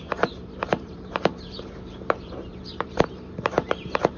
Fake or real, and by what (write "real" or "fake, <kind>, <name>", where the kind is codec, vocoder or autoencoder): fake, vocoder, BigVGAN v2